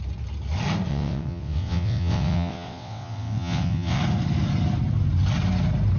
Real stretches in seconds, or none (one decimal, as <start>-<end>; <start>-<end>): 0.0-0.9; 4.0-6.0